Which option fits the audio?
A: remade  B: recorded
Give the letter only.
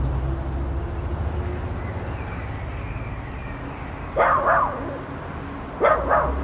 B